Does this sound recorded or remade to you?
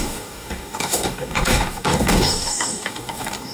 remade